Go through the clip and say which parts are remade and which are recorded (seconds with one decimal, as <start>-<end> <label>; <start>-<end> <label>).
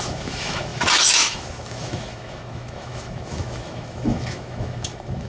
0.0-5.3 remade